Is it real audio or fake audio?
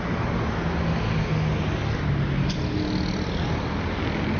real